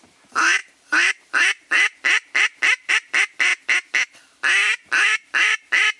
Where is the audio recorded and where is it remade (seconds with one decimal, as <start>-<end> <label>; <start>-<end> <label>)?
0.0-3.5 remade; 3.5-4.9 recorded; 4.9-6.0 remade